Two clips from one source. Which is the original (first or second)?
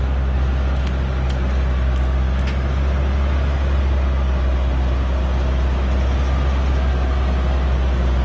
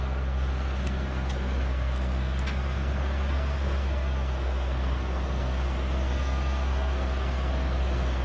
first